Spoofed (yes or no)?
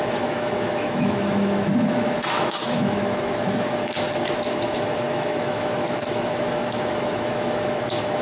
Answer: yes